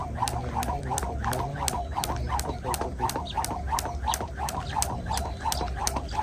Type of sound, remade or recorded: recorded